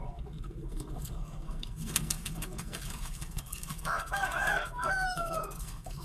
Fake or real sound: fake